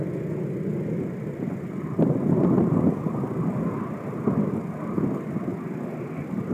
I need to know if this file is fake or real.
real